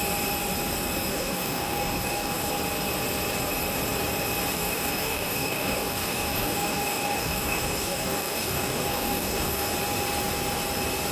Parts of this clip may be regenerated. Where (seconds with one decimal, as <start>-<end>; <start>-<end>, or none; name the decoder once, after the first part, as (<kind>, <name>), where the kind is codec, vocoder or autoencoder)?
1.1-2.5 (codec, DAC); 4.5-9.7